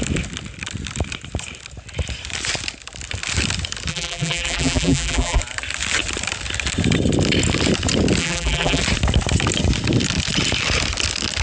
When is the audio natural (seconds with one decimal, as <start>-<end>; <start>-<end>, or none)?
0.0-3.9; 5.4-8.2; 8.8-11.4